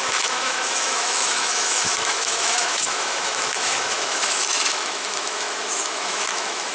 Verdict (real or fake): fake